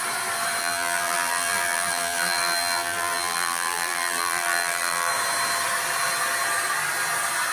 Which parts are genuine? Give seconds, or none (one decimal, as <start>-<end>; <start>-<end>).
0.0-0.6; 5.1-7.5